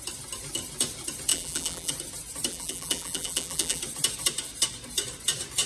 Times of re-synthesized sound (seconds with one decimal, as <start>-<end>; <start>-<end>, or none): 1.3-1.9; 2.5-3.8